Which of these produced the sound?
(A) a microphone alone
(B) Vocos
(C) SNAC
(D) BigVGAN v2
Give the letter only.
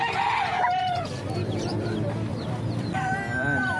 D